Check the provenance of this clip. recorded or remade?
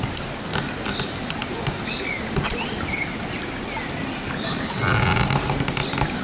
recorded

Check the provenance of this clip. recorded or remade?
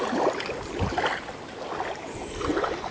recorded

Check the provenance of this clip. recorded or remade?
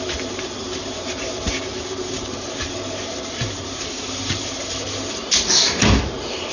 remade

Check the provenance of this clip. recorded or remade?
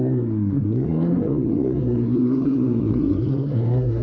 remade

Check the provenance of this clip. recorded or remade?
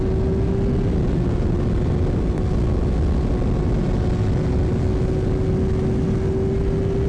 recorded